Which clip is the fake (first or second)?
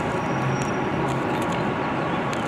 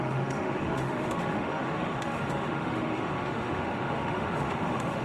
second